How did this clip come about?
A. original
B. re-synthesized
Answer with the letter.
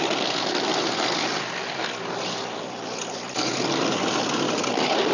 A